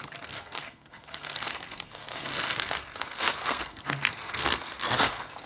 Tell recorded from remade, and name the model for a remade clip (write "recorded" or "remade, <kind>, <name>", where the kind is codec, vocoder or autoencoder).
remade, codec, SNAC